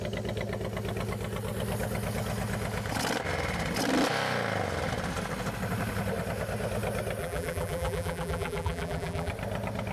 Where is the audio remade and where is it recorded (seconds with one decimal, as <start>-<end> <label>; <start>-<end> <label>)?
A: 0.0-7.2 recorded; 7.2-9.3 remade; 9.3-9.9 recorded